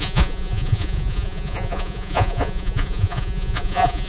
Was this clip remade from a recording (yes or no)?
yes